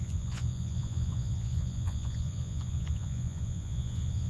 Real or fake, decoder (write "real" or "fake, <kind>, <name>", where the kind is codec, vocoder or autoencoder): fake, vocoder, Vocos